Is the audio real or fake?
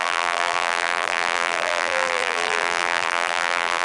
fake